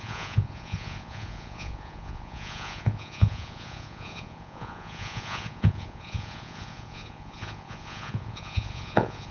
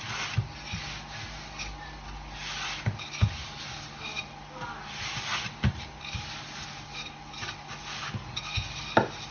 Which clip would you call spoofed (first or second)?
first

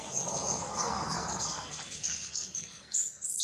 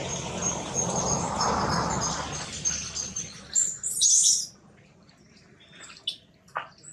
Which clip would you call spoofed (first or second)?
first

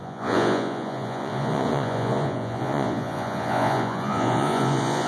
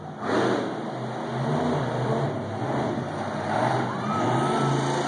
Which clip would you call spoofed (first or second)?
first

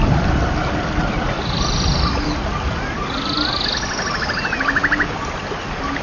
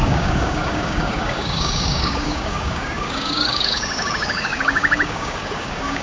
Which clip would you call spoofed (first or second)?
second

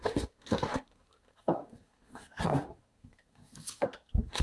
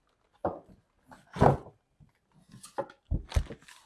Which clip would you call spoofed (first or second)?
first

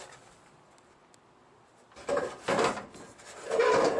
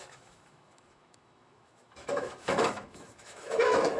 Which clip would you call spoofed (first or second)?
second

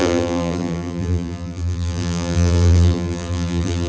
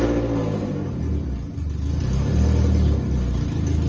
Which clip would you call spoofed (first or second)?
first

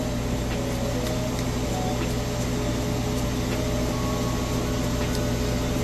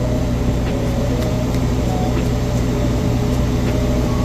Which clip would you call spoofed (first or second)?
second